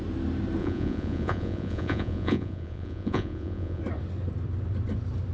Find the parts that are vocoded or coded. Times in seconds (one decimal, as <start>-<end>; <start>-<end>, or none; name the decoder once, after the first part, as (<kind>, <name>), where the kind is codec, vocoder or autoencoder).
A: 0.6-3.8 (vocoder, Vocos)